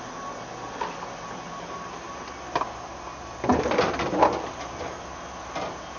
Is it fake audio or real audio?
real